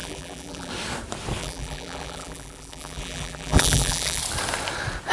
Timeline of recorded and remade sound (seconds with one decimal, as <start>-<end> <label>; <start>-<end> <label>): 0.0-0.7 remade; 0.7-1.4 recorded; 1.4-4.2 remade; 4.2-5.1 recorded